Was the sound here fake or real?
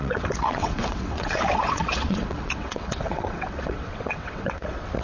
fake